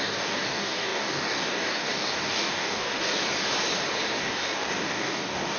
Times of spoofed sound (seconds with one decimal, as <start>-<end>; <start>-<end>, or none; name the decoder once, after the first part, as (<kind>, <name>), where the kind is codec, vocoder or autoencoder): 0.0-3.2 (codec, DAC); 4.2-5.6